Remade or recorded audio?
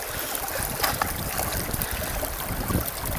recorded